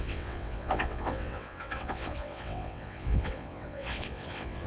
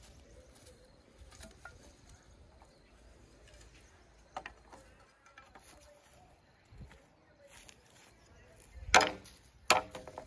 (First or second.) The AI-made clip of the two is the first